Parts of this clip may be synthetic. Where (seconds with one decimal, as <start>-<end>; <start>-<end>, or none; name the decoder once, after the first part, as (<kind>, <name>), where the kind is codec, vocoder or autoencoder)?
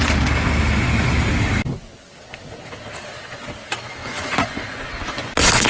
4.0-5.3 (vocoder, Vocos)